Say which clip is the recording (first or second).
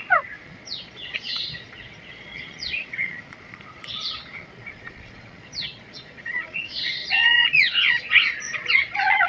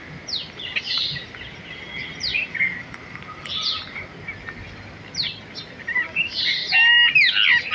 second